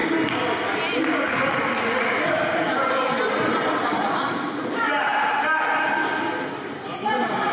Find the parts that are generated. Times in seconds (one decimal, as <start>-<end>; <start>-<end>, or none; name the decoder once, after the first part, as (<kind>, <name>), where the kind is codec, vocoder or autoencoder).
none